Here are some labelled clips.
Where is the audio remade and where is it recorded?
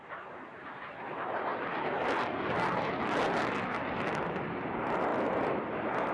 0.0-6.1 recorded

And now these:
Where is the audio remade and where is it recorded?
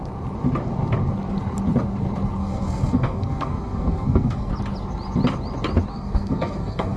0.0-2.4 recorded; 2.4-4.5 remade; 4.5-5.9 recorded; 5.9-7.0 remade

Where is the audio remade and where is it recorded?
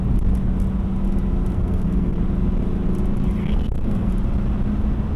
0.0-1.5 recorded; 1.5-2.2 remade; 2.2-3.4 recorded; 3.4-4.1 remade; 4.1-5.2 recorded